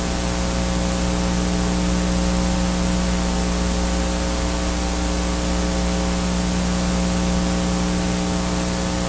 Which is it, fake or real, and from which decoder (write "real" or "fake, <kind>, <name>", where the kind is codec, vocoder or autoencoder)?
real